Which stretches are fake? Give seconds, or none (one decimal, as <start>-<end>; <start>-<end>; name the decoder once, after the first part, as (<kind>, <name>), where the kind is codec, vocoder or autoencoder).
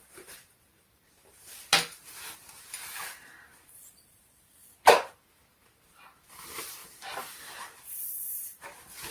0.0-9.1 (vocoder, BigVGAN v2)